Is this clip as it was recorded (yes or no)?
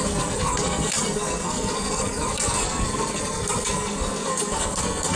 no